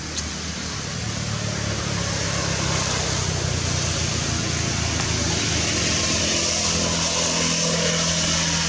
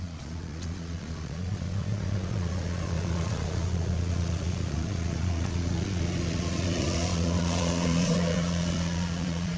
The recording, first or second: first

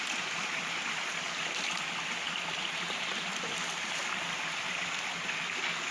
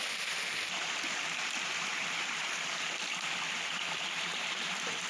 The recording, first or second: first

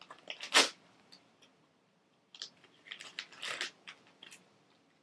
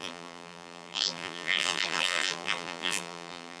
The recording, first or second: first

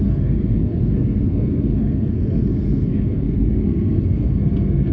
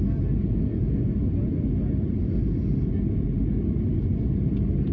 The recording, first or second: second